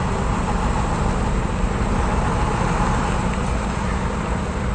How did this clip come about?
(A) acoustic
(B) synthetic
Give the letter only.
A